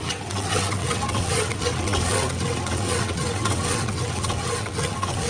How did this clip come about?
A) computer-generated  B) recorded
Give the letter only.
A